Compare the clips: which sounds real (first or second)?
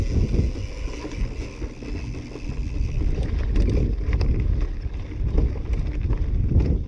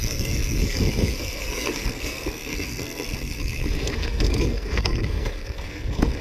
first